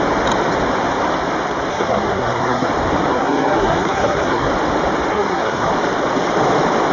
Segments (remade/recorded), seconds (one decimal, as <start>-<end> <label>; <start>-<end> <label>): 0.0-1.7 recorded; 1.7-2.7 remade; 2.7-3.1 recorded; 3.1-4.5 remade; 4.5-5.1 recorded; 5.1-5.7 remade; 5.7-6.9 recorded